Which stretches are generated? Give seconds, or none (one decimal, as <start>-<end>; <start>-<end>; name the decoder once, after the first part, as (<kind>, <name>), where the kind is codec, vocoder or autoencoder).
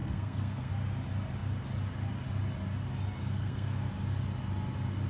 0.0-0.7 (codec, SNAC); 3.2-3.9